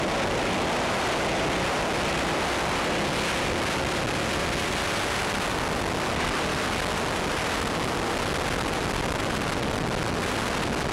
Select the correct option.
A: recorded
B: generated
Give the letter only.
A